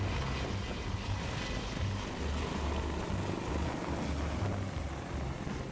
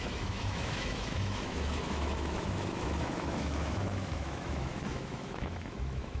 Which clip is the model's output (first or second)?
second